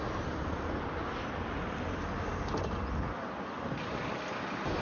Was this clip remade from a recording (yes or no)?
no